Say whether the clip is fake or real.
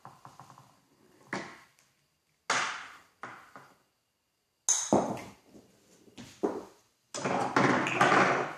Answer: real